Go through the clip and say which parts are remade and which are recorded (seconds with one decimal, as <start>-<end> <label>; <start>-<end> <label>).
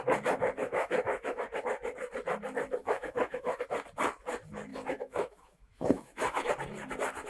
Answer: 0.0-0.6 recorded; 0.6-1.4 remade; 1.4-2.8 recorded; 2.8-3.6 remade; 3.6-4.7 recorded; 4.7-6.5 remade; 6.5-7.3 recorded